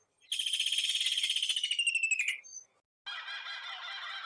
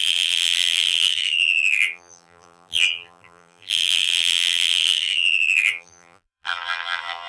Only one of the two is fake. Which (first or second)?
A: second